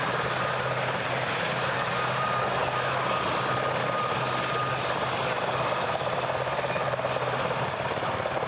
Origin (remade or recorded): recorded